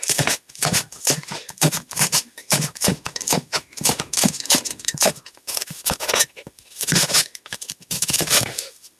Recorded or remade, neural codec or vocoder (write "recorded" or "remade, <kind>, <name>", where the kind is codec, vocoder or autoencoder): remade, autoencoder, DAC-VAE